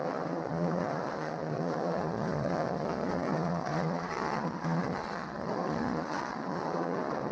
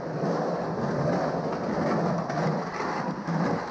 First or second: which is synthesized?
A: first